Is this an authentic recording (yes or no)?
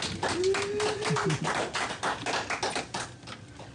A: yes